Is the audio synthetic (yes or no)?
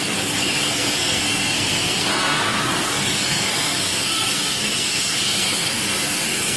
yes